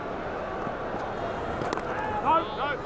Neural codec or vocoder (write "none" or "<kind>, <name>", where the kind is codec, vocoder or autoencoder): none